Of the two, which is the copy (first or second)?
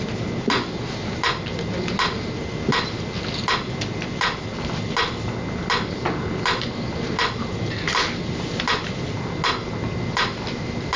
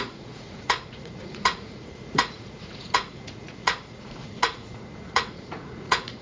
second